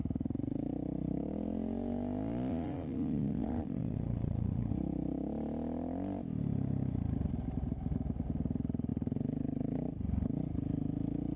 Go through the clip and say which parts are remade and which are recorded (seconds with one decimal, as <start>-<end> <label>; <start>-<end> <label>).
0.0-2.5 recorded; 2.5-4.7 remade; 4.7-11.4 recorded